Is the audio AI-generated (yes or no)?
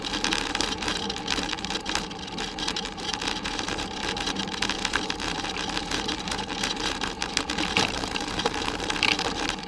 yes